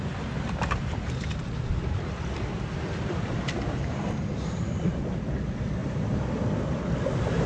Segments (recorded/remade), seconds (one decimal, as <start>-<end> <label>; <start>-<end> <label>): 0.0-7.5 recorded